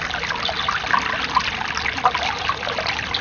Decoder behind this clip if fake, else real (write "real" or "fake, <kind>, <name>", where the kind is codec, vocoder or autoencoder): real